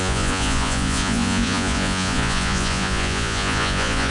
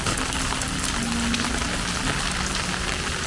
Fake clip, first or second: first